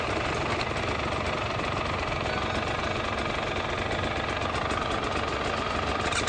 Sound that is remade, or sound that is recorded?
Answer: recorded